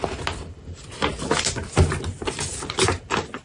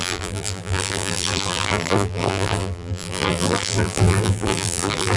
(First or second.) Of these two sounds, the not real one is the second